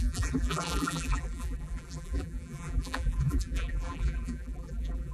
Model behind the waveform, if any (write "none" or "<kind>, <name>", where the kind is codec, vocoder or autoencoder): vocoder, BigVGAN v2